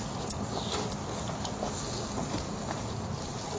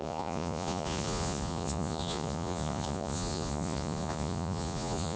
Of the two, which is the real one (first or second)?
first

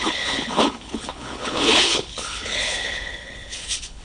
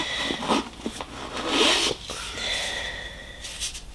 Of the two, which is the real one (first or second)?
second